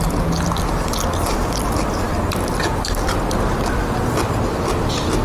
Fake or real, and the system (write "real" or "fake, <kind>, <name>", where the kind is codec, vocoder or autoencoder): real